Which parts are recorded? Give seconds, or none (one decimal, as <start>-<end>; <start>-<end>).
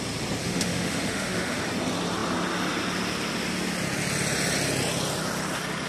0.0-0.4; 1.6-5.9